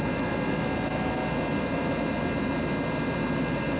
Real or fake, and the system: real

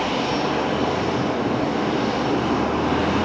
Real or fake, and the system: real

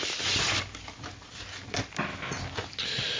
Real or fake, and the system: real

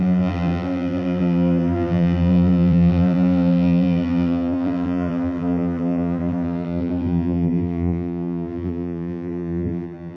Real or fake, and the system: fake, vocoder, BigVGAN v2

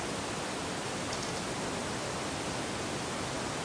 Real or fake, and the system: real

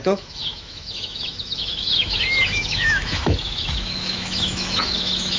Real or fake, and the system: fake, autoencoder, DAC-VAE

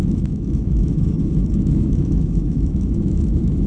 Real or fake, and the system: fake, autoencoder, DAC-VAE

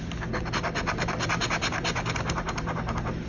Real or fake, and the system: real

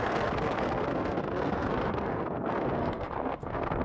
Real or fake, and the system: fake, codec, SNAC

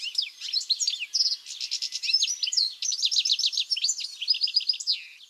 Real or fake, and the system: real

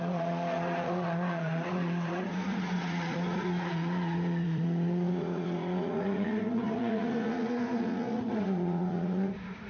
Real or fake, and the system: fake, vocoder, Vocos